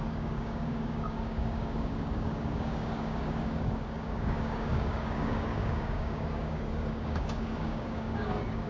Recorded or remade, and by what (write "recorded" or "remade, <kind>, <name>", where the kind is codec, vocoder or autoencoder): remade, codec, DAC